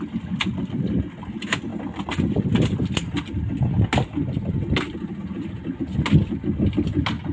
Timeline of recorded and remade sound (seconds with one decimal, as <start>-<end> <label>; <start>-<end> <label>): 0.0-7.3 recorded